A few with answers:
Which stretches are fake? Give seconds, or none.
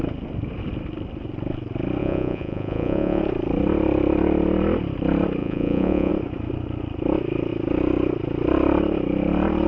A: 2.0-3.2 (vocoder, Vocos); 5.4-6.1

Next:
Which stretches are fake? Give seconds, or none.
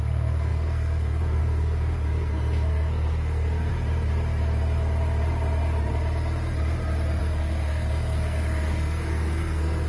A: 0.0-3.7 (codec, SNAC); 7.2-9.9